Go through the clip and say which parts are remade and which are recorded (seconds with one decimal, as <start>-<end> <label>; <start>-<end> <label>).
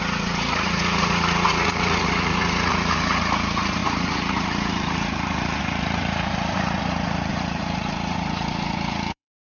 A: 0.0-9.5 remade